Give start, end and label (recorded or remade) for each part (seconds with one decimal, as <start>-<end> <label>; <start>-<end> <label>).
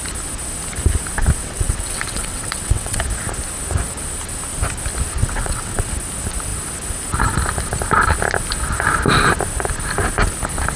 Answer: 0.0-1.4 recorded; 1.4-3.0 remade; 3.0-5.2 recorded; 5.2-5.9 remade; 5.9-10.8 recorded